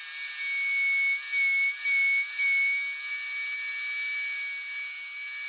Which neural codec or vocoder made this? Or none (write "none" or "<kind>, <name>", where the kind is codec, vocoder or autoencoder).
none